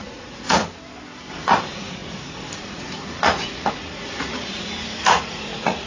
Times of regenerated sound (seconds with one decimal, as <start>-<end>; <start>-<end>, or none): 0.0-0.6; 1.3-5.9